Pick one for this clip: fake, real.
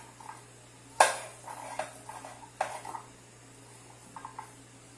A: real